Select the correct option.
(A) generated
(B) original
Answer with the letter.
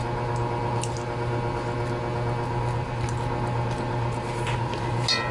B